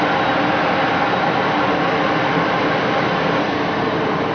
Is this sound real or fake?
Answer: real